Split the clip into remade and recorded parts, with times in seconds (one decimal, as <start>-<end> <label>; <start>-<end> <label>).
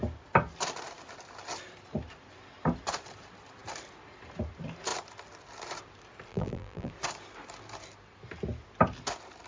0.0-6.3 recorded; 6.3-6.9 remade; 6.9-9.5 recorded